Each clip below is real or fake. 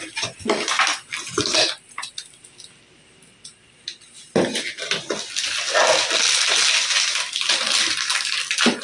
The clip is real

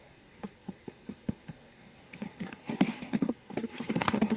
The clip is fake